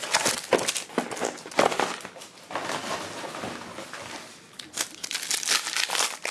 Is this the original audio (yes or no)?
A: yes